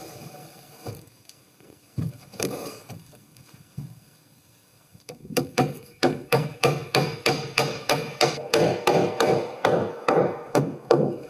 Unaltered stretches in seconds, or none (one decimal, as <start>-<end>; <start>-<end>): none